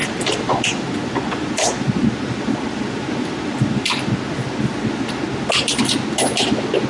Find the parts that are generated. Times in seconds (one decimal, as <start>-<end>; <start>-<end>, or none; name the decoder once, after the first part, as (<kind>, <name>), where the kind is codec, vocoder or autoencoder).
0.0-4.1 (vocoder, BigVGAN v2)